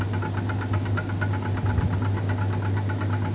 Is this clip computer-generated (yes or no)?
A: no